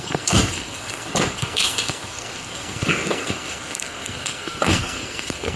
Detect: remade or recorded remade